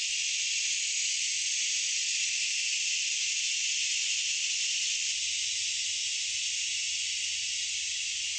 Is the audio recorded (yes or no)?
yes